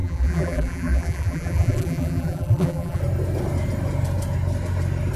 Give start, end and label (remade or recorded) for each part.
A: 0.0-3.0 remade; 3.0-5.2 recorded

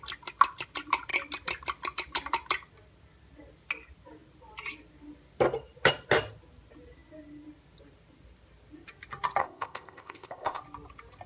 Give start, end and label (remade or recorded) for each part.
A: 0.0-9.4 recorded; 9.4-10.6 remade; 10.6-11.3 recorded

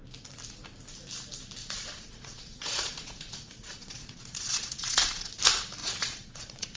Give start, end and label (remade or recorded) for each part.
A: 0.0-1.6 recorded; 1.6-5.3 remade; 5.3-5.8 recorded; 5.8-6.8 remade

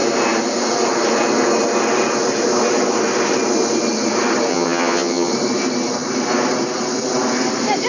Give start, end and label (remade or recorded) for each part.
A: 0.0-4.5 recorded; 4.5-5.3 remade; 5.3-7.9 recorded

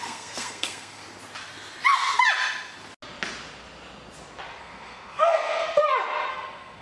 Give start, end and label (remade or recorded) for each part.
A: 0.0-1.0 remade; 1.0-4.6 recorded; 4.6-5.8 remade; 5.8-6.3 recorded; 6.3-6.8 remade

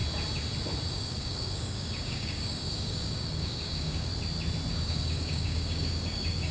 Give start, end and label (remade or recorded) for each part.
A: 0.0-0.9 recorded; 0.9-4.1 remade; 4.1-4.7 recorded; 4.7-6.5 remade

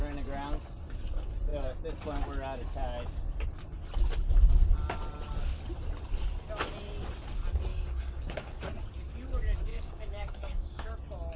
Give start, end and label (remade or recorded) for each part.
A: 0.0-7.7 recorded; 7.7-8.6 remade; 8.6-9.7 recorded; 9.7-10.9 remade; 10.9-11.4 recorded

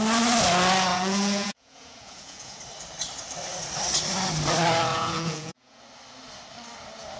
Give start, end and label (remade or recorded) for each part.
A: 0.0-0.9 recorded; 0.9-2.6 remade; 2.6-4.9 recorded; 4.9-5.8 remade; 5.8-7.2 recorded